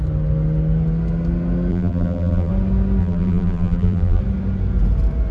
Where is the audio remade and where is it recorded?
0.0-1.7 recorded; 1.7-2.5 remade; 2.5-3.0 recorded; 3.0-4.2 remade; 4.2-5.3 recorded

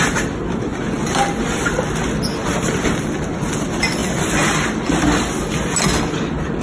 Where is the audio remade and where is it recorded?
0.0-2.4 recorded; 2.4-3.2 remade; 3.2-6.6 recorded